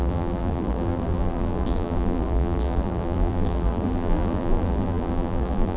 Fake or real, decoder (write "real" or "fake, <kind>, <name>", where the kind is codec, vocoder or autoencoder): fake, vocoder, BigVGAN v2